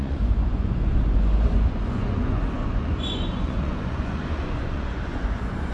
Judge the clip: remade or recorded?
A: remade